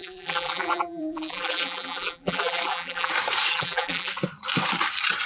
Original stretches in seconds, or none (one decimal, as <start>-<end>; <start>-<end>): 3.1-3.5; 4.1-5.3